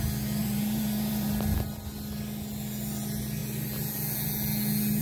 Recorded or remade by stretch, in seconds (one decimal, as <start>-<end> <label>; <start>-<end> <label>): 0.0-0.4 recorded; 0.4-1.3 remade; 1.3-5.0 recorded

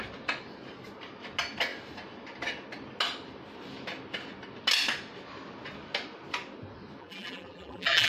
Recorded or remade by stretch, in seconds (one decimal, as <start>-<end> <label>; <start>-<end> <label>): 0.0-7.0 recorded; 7.0-8.1 remade

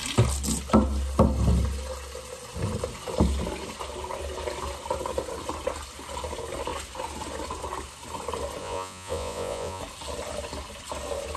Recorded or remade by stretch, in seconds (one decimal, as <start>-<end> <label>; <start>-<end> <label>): 0.0-8.6 recorded; 8.6-9.8 remade; 9.8-11.4 recorded

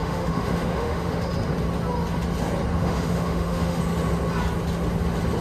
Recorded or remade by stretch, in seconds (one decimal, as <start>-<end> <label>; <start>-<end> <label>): 0.0-1.2 remade; 1.2-2.8 recorded; 2.8-3.8 remade; 3.8-5.4 recorded

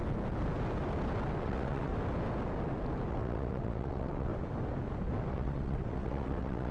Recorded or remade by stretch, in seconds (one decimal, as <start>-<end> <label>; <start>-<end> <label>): 0.0-1.4 recorded; 1.4-1.9 remade; 1.9-3.1 recorded; 3.1-4.3 remade; 4.3-5.3 recorded; 5.3-6.7 remade

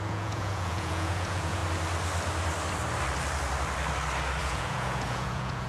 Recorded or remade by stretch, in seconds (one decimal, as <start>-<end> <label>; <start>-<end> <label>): 0.0-1.6 remade; 1.6-4.4 recorded; 4.4-5.7 remade

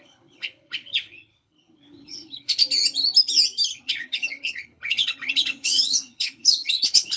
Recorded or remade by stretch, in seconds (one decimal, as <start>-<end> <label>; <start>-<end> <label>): 0.0-2.6 remade; 2.6-3.7 recorded; 3.7-7.2 remade